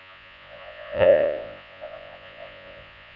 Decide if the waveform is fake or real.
fake